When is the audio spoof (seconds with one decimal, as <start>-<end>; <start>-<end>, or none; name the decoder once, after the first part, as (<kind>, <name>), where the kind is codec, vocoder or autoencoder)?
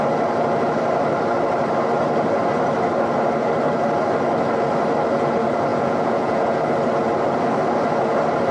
5.7-6.6 (vocoder, Vocos)